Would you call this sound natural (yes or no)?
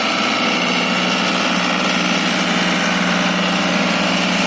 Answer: yes